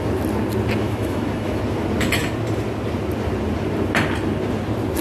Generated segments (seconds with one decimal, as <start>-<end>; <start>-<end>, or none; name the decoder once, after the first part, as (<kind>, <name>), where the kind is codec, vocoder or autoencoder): 0.8-1.6 (autoencoder, DAC-VAE)